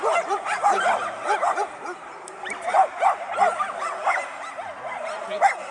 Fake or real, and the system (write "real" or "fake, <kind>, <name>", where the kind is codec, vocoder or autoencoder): real